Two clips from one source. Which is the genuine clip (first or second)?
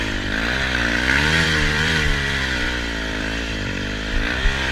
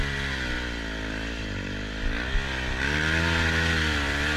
second